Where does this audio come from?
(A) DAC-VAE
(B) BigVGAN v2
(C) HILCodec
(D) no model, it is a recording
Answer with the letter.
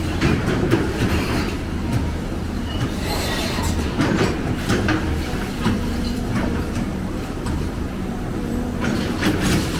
B